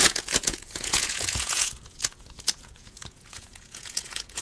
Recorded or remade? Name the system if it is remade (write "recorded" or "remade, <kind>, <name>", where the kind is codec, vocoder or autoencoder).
remade, vocoder, Vocos